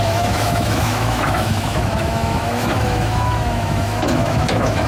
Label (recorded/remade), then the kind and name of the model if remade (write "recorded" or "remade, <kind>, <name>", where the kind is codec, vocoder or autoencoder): remade, autoencoder, DAC-VAE